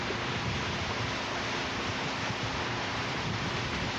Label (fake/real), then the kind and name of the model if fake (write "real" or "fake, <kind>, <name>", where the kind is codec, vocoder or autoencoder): fake, vocoder, BigVGAN v2